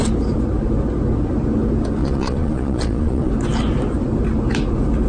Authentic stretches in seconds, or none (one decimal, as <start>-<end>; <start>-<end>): 0.0-2.0; 3.3-5.1